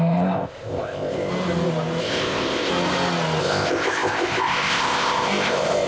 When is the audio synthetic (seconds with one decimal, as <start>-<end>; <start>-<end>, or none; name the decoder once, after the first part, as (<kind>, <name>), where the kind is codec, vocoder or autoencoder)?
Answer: 0.0-1.3 (codec, ZipCodec); 2.0-2.7; 3.4-5.9